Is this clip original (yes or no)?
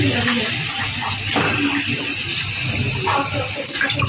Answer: yes